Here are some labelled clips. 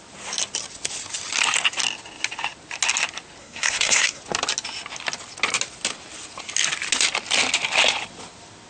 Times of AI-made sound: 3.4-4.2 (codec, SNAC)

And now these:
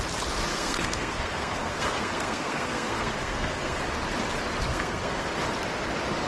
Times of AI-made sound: 0.5-3.8 (codec, SNAC); 4.7-5.3

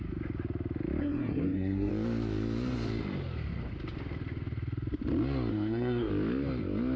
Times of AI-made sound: 1.0-1.9 (codec, SNAC); 5.5-6.1

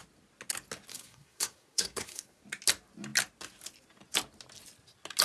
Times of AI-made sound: 0.9-2.4 (codec, SNAC)

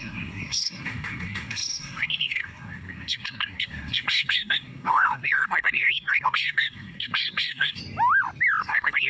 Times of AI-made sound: 0.0-7.8 (codec, SNAC); 8.6-9.1